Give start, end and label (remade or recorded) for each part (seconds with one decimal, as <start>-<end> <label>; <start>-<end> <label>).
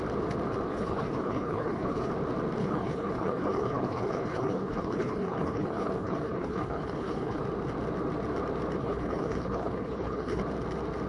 0.0-0.7 recorded; 0.7-2.1 remade; 2.1-2.6 recorded; 2.6-7.4 remade; 7.4-8.8 recorded; 8.8-10.4 remade; 10.4-11.1 recorded